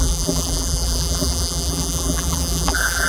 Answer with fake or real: fake